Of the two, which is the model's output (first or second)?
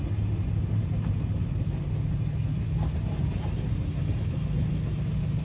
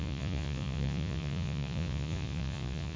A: second